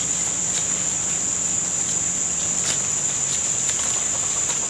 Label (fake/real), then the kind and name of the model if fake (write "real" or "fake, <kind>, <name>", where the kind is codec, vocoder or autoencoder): real